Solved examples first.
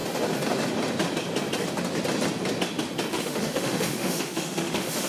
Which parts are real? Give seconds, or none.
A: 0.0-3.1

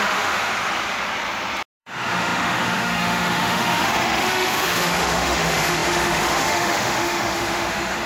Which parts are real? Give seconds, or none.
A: 0.5-1.8

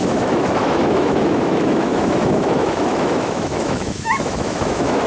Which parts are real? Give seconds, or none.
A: none